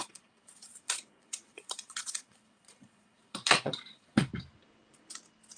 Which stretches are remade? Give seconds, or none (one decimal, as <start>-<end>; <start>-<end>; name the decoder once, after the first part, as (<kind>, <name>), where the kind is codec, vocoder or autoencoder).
0.0-4.3 (vocoder, Vocos)